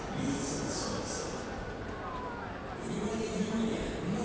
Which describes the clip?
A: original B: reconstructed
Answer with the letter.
A